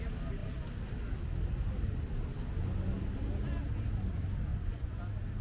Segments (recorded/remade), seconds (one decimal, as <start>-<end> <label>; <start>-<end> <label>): 0.0-4.5 recorded; 4.5-5.0 remade; 5.0-5.4 recorded